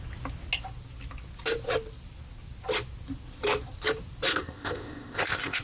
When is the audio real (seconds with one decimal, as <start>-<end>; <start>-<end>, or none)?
0.0-4.3